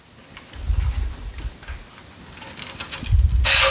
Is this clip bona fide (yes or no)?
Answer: yes